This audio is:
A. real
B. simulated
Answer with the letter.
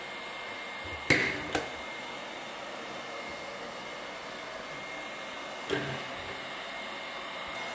A